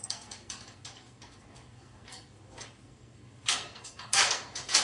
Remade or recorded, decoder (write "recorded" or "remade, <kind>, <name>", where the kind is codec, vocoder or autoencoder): remade, codec, SNAC